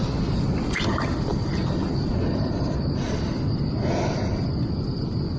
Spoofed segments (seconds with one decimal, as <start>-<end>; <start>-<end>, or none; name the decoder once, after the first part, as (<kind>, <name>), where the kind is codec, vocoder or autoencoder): none